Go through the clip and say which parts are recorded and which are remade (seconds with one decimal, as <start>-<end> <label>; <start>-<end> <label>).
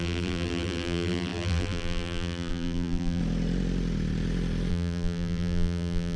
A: 0.0-3.2 remade; 3.2-4.7 recorded; 4.7-6.2 remade